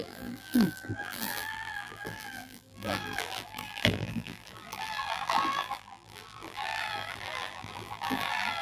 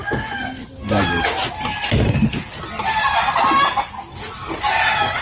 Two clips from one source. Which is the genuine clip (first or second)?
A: second